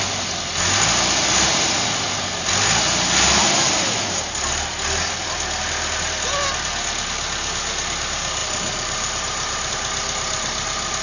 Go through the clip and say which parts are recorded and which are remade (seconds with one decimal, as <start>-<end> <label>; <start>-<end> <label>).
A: 0.0-8.4 recorded; 8.4-9.7 remade; 9.7-11.0 recorded